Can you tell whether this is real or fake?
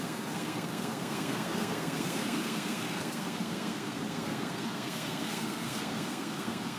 fake